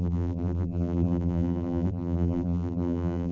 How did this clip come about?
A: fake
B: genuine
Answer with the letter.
A